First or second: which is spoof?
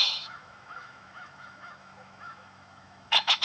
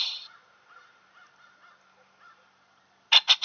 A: first